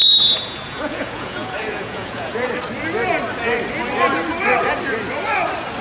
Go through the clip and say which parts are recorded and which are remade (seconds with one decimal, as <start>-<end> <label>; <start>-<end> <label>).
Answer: 0.0-2.5 remade; 2.5-5.8 recorded